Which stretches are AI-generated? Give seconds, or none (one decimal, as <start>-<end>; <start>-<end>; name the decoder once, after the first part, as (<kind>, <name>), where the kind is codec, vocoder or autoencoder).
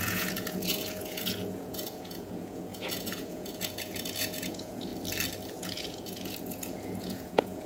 0.0-4.9 (vocoder, Vocos); 5.5-7.7